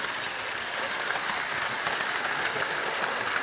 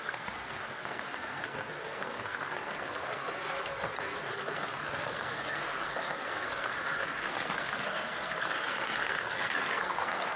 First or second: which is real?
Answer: first